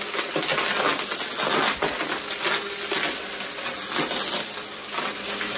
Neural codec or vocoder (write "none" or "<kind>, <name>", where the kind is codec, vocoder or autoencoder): none